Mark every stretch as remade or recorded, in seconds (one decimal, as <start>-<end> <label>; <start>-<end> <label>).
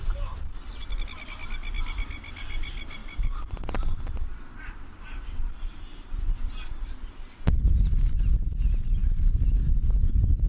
0.0-1.6 recorded; 1.6-2.3 remade; 2.3-3.0 recorded; 3.0-8.2 remade; 8.2-9.0 recorded; 9.0-9.6 remade; 9.6-10.5 recorded